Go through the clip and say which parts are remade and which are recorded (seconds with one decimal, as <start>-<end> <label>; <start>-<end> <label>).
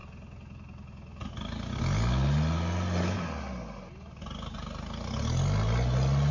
0.0-6.3 recorded